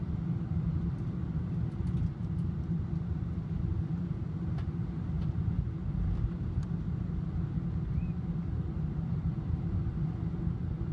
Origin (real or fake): real